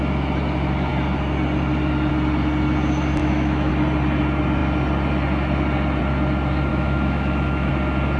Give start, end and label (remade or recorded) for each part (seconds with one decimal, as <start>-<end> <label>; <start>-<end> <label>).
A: 0.0-3.2 recorded; 3.2-3.7 remade; 3.7-6.7 recorded; 6.7-7.7 remade; 7.7-8.2 recorded